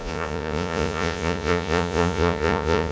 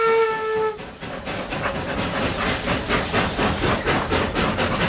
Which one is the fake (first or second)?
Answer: first